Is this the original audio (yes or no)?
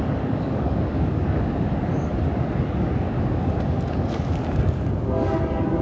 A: no